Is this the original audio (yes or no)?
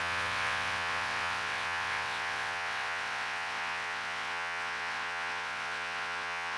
no